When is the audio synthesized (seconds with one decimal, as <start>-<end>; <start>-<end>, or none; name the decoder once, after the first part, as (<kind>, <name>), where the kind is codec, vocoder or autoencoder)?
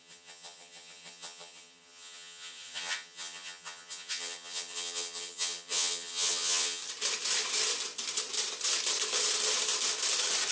0.0-6.8 (vocoder, HiFi-GAN)